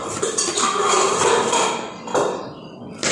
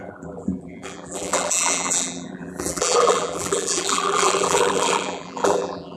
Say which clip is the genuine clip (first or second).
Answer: first